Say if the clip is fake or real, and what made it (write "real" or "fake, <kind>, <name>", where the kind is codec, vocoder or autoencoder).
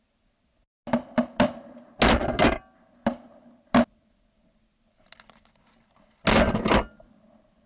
real